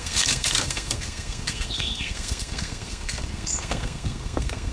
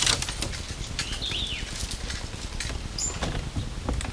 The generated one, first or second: first